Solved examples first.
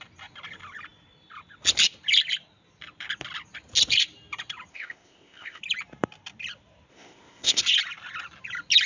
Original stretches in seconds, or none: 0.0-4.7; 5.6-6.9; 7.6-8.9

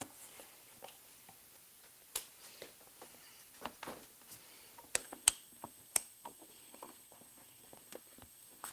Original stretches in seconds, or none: 0.0-5.0

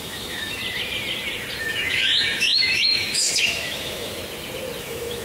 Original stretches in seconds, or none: 0.6-1.6; 4.2-4.8

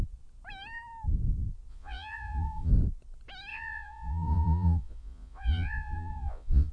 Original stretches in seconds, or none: 0.0-1.7; 2.7-3.5